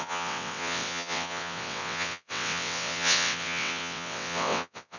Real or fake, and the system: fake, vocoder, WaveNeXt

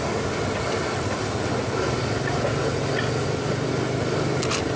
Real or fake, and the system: real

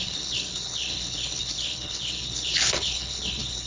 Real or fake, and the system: fake, codec, HILCodec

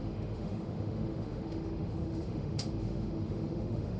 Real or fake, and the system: fake, autoencoder, DAC-VAE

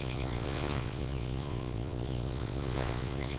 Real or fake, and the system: fake, vocoder, Vocos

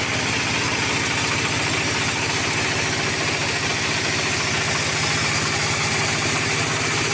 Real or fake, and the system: real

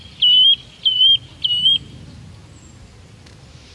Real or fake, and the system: real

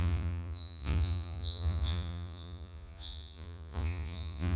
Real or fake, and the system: fake, vocoder, Vocos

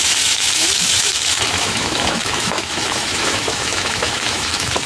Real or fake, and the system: fake, autoencoder, DAC-VAE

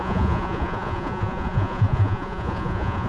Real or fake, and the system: fake, vocoder, Vocos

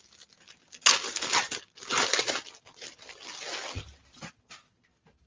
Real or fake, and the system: real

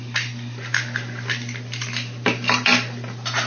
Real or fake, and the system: real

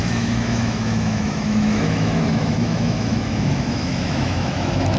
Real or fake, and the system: fake, autoencoder, DAC-VAE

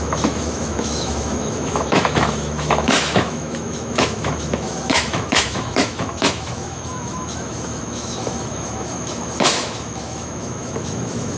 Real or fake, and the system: fake, autoencoder, DAC-VAE